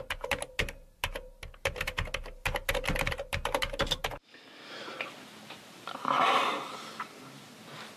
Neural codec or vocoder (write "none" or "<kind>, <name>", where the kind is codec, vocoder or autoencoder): none